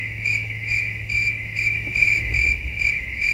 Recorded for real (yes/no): no